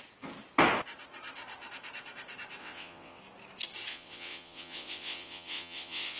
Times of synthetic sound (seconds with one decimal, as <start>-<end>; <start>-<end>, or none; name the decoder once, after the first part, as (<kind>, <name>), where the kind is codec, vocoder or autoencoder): 2.6-3.2 (vocoder, WaveNeXt); 3.9-6.2

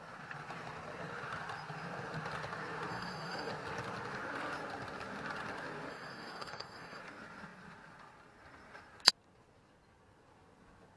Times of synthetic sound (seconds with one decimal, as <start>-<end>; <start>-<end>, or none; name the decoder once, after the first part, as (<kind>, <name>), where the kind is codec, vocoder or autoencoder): 2.9-3.5 (codec, SNAC); 5.9-7.0

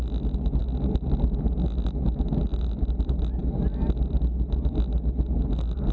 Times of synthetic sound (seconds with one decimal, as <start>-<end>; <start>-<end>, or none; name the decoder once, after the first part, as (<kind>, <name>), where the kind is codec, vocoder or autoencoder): none

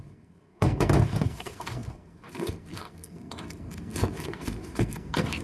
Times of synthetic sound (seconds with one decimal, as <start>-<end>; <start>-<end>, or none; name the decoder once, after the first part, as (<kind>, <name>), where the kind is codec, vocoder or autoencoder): 0.0-5.4 (codec, SNAC)